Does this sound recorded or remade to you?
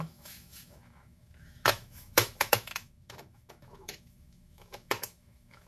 remade